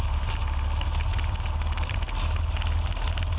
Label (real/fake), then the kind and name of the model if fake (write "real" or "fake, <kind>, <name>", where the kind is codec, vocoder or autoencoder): real